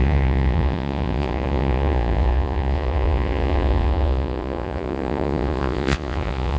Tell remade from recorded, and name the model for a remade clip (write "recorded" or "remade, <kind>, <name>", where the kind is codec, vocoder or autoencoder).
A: remade, vocoder, Vocos